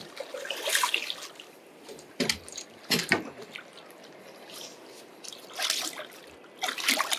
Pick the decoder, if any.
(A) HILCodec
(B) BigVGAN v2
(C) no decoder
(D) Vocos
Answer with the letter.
C